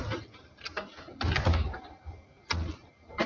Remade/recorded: recorded